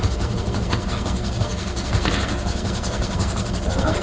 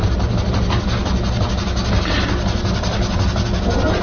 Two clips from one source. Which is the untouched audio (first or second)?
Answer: second